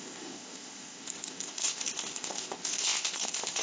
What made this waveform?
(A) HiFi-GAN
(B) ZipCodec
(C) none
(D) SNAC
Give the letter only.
B